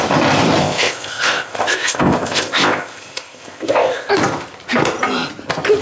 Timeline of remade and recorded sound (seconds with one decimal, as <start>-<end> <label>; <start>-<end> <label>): 0.0-0.6 recorded; 0.6-4.1 remade; 4.1-5.8 recorded